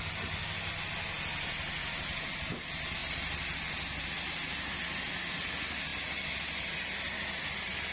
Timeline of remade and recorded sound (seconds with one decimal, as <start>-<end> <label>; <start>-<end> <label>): 0.0-7.9 recorded